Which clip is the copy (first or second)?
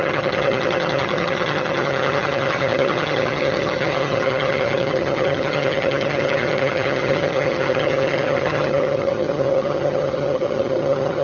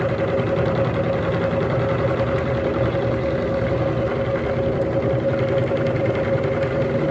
first